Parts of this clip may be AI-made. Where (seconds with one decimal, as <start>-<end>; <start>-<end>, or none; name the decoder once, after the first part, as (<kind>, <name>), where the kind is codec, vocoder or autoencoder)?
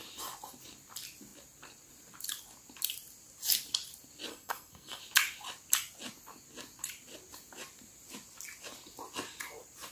4.3-5.0 (codec, SNAC)